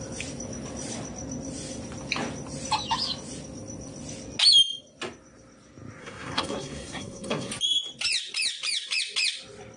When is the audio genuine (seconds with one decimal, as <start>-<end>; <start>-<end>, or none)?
0.0-6.0; 7.5-9.8